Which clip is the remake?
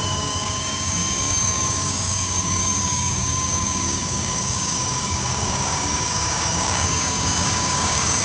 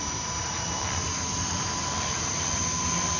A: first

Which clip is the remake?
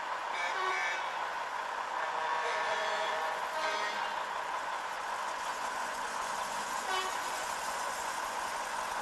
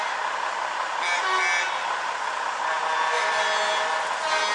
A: first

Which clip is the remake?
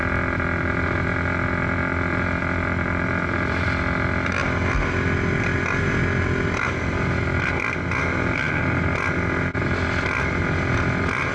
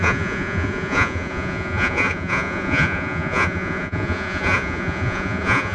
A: second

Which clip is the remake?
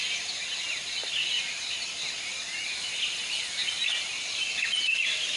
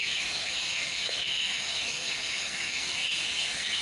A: second